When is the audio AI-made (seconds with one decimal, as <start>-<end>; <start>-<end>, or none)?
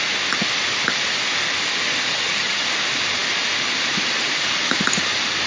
2.1-2.6